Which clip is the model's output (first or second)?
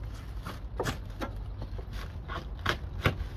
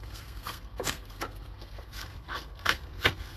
second